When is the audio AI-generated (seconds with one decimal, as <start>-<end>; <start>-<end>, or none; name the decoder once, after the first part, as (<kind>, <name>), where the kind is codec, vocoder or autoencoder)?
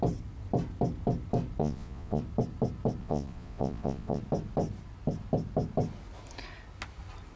1.6-2.2 (vocoder, Vocos); 3.0-4.2